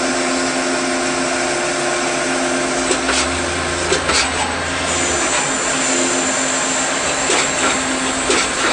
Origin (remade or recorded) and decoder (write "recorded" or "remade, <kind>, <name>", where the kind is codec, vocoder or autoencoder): recorded